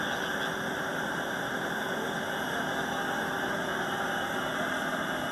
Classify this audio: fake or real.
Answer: real